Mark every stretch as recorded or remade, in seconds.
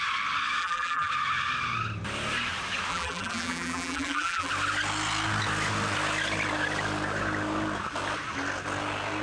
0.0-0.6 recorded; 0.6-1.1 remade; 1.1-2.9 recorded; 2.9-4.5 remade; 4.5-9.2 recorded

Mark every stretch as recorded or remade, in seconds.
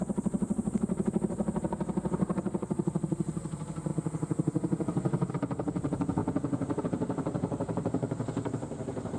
0.0-3.9 remade; 3.9-5.3 recorded; 5.3-6.2 remade; 6.2-6.8 recorded; 6.8-9.2 remade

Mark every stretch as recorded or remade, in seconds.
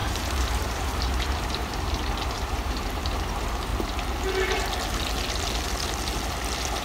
0.0-3.7 remade; 3.7-6.8 recorded